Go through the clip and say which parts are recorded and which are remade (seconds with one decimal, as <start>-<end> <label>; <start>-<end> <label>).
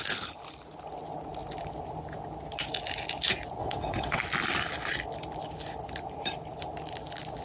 0.0-3.6 recorded; 3.6-4.2 remade; 4.2-7.4 recorded